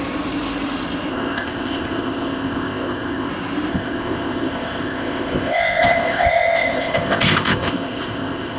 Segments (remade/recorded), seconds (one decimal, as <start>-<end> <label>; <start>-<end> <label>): 0.0-1.1 recorded; 1.1-3.3 remade; 3.3-3.7 recorded; 3.7-8.6 remade